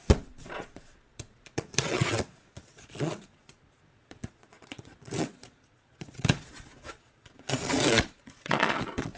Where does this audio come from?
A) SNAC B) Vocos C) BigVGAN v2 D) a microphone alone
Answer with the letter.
B